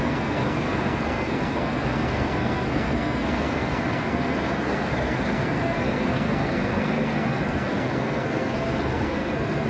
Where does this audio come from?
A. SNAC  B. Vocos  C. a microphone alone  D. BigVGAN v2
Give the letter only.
A